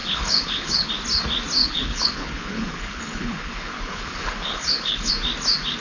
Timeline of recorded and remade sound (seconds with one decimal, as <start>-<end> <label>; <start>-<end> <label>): 0.0-0.9 remade; 0.9-1.6 recorded; 1.6-5.1 remade; 5.1-5.8 recorded